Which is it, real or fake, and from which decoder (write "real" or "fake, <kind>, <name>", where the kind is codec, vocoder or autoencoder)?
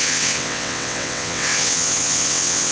fake, vocoder, WaveNeXt